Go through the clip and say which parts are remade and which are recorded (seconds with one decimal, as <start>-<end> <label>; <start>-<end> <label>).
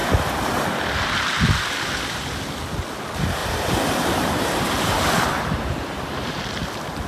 0.0-3.4 recorded; 3.4-6.4 remade; 6.4-7.1 recorded